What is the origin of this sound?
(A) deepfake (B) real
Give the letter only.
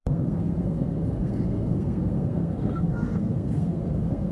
A